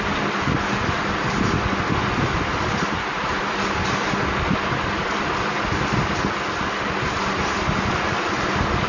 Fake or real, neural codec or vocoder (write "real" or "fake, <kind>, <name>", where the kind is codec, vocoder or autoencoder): real